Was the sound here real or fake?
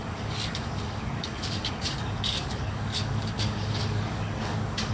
fake